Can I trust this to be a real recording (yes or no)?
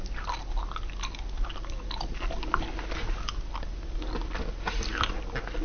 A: yes